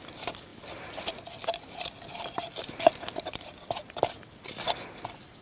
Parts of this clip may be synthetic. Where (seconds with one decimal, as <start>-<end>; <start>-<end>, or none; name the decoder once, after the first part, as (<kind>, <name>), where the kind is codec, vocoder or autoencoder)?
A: none